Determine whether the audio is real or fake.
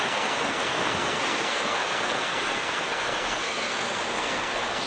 fake